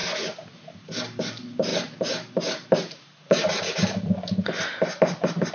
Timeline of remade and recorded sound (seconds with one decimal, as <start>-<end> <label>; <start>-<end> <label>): 0.0-0.9 remade; 0.9-1.7 recorded; 1.7-5.0 remade; 5.0-5.5 recorded